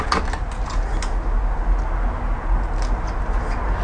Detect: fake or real real